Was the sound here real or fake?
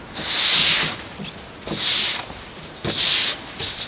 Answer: real